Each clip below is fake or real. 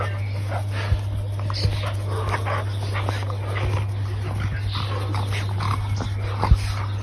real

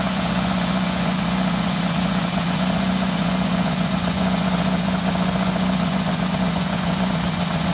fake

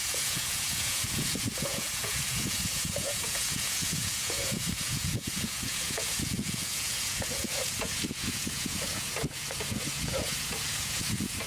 fake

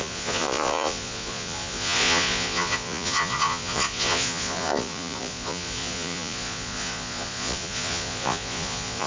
fake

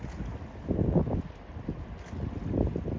real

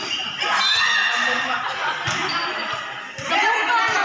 real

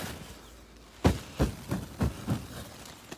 real